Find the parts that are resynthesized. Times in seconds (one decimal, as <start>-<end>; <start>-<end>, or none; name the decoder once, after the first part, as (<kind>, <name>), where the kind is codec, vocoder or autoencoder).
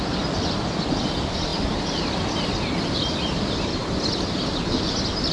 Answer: none